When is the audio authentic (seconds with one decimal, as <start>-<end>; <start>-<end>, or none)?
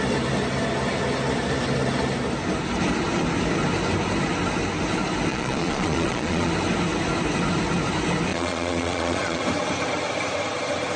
0.0-5.3; 6.5-8.3; 9.4-11.0